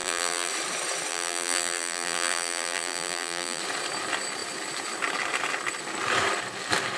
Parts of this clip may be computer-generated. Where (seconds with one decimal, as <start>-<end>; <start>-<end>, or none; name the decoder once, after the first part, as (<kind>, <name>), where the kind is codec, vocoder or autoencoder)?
0.0-0.5 (vocoder, BigVGAN v2); 1.1-3.6